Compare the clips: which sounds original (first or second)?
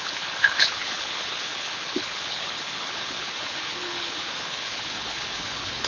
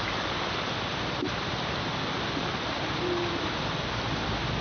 second